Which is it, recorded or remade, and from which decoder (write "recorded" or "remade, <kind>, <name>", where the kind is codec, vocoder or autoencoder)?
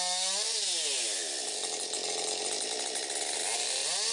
recorded